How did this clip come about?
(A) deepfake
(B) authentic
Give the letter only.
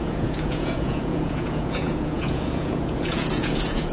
A